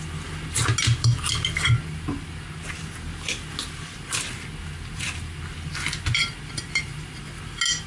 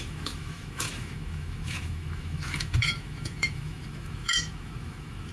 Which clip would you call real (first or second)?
first